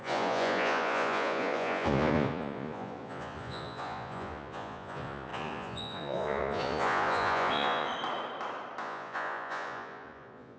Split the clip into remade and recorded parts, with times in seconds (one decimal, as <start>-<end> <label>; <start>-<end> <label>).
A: 0.0-7.9 remade; 7.9-8.8 recorded; 8.8-10.6 remade